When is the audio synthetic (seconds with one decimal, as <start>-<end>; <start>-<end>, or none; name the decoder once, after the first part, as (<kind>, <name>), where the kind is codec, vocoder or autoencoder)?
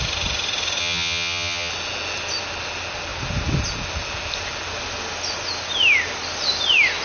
0.8-1.7 (vocoder, HiFi-GAN)